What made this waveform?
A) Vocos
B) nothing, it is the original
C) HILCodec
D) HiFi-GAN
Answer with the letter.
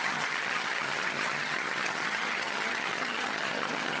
D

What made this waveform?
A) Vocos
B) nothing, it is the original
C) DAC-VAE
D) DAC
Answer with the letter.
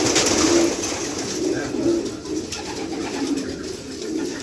B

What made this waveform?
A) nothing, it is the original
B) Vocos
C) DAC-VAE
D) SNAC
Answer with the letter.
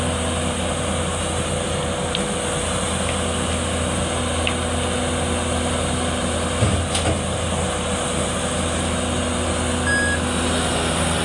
A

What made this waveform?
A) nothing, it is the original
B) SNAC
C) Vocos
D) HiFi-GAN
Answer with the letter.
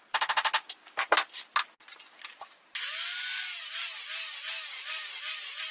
A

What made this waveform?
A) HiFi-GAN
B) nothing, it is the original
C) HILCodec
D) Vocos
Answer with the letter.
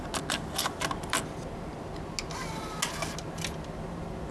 B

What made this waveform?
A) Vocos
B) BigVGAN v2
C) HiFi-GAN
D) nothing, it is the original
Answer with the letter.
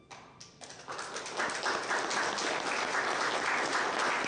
D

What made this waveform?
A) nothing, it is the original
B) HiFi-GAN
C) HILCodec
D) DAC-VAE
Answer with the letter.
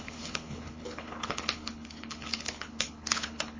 C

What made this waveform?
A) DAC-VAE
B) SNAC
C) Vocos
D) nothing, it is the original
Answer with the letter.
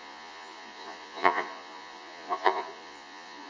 C